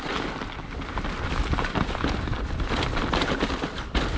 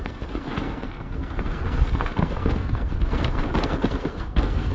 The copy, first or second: second